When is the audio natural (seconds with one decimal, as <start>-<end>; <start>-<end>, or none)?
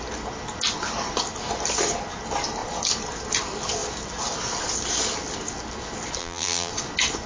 0.0-6.2; 6.7-7.3